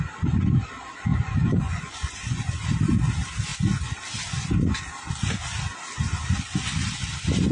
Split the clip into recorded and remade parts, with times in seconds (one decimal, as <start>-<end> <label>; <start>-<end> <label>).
0.0-1.1 recorded; 1.1-2.5 remade; 2.5-7.5 recorded